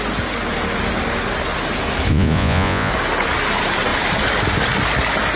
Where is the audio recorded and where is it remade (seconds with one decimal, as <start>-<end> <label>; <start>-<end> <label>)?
0.0-2.1 recorded; 2.1-2.9 remade; 2.9-5.4 recorded

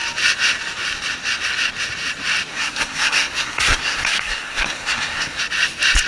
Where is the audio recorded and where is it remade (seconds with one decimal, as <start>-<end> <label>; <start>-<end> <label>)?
0.0-2.5 recorded; 2.5-5.4 remade; 5.4-6.1 recorded

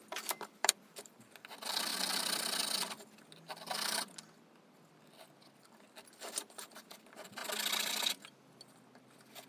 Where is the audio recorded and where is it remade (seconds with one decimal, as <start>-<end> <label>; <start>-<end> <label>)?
0.0-0.6 recorded; 0.6-1.4 remade; 1.4-9.5 recorded

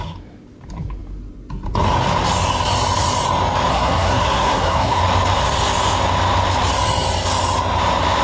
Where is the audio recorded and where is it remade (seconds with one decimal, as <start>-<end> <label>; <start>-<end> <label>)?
0.0-3.7 recorded; 3.7-5.0 remade; 5.0-8.2 recorded

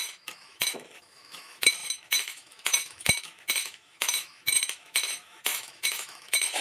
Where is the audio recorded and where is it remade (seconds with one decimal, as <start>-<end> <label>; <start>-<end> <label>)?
0.0-6.6 remade

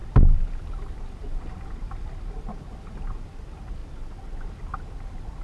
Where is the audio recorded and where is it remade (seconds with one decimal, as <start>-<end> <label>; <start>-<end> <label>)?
0.0-5.4 recorded

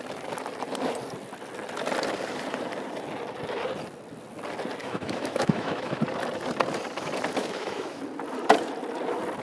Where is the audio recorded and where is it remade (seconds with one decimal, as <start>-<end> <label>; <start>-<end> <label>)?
0.0-4.8 recorded; 4.8-6.0 remade; 6.0-7.4 recorded; 7.4-8.0 remade; 8.0-9.4 recorded